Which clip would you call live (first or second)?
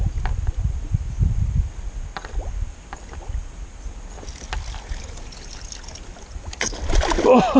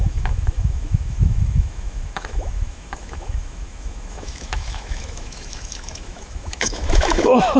first